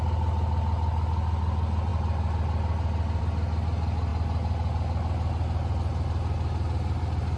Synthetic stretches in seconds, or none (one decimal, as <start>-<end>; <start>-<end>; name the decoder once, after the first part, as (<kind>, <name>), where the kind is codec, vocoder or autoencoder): none